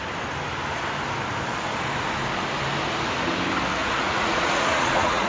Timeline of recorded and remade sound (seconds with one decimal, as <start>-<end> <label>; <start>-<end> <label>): 0.0-3.8 recorded; 3.8-5.3 remade